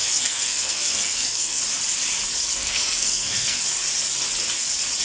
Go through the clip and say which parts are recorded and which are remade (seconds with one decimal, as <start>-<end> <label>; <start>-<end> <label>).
0.0-1.6 remade; 1.6-2.6 recorded; 2.6-3.6 remade; 3.6-5.0 recorded